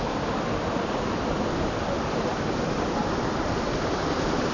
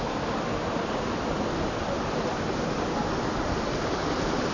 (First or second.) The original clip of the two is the second